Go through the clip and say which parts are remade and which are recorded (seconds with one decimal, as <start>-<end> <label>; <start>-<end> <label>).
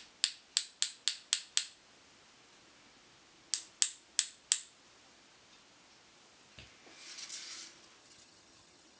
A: 0.0-8.0 recorded; 8.0-9.0 remade